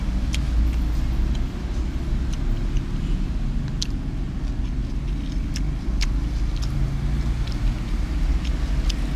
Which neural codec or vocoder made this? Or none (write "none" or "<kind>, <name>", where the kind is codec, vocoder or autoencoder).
none